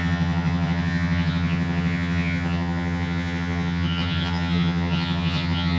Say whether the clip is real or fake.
fake